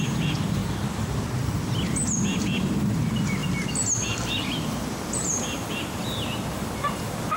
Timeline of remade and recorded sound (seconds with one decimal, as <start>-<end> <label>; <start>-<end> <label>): 0.0-0.6 remade; 0.6-2.4 recorded; 2.4-3.4 remade; 3.4-4.4 recorded; 4.4-7.4 remade